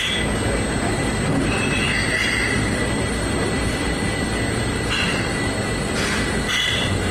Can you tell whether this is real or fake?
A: real